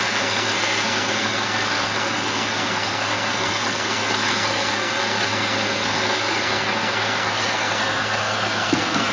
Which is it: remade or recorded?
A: remade